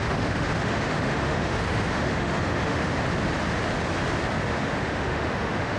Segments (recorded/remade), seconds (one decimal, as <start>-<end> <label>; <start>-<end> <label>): 0.0-2.9 remade; 2.9-4.5 recorded; 4.5-5.8 remade